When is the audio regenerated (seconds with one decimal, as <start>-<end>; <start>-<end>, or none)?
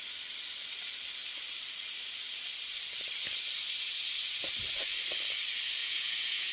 5.8-6.5